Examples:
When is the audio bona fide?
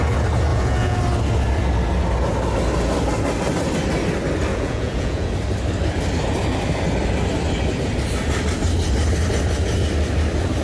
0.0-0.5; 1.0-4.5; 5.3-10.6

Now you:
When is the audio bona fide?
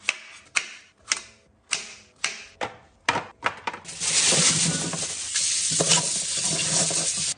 0.0-7.4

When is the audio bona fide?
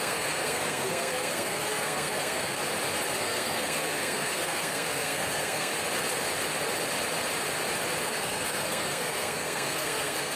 2.6-3.2; 5.7-8.0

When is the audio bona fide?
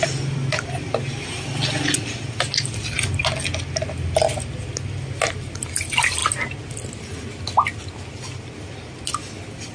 0.0-9.7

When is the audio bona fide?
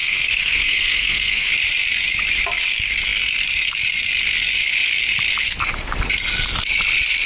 1.5-7.3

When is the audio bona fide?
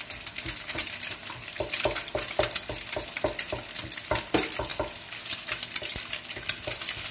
0.0-7.1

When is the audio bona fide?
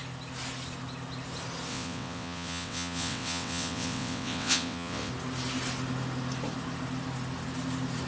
0.0-1.7; 5.1-8.1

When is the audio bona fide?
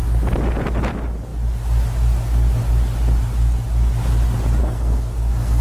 0.0-4.6